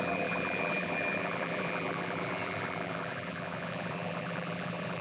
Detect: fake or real fake